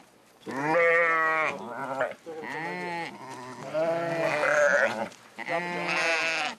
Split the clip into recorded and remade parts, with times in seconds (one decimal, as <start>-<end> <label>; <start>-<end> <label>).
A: 0.0-6.6 recorded